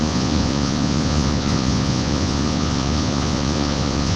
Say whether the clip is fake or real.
fake